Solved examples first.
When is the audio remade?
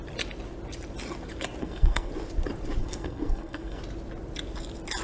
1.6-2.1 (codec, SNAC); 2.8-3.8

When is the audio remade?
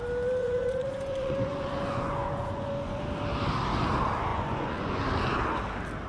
0.4-3.0 (vocoder, Vocos); 4.3-5.0